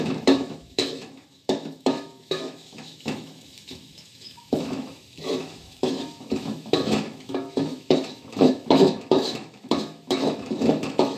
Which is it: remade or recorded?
remade